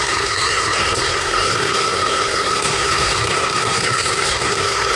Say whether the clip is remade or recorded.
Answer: remade